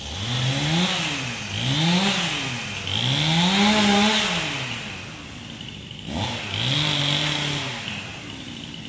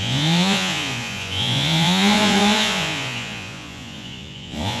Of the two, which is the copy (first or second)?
second